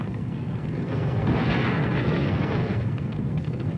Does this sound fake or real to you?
fake